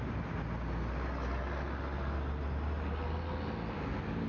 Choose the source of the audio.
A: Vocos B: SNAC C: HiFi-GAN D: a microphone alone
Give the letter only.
D